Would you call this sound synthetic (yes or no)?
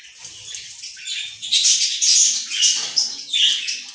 no